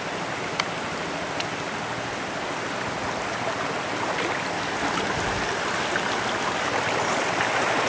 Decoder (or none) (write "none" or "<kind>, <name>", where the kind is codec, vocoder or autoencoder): none